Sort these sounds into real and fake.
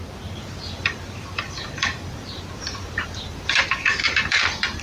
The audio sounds fake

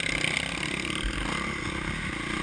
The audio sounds real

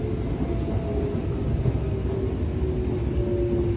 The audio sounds real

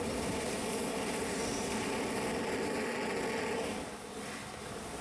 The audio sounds real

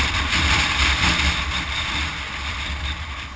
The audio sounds fake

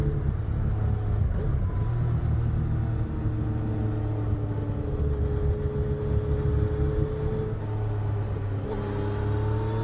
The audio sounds real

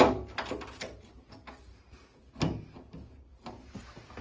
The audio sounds real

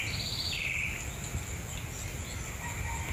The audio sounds real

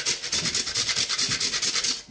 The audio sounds real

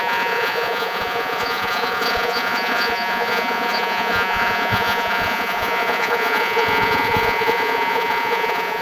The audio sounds fake